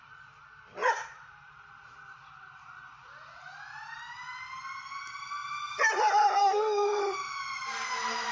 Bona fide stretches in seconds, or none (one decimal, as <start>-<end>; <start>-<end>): 0.0-6.4; 7.0-8.3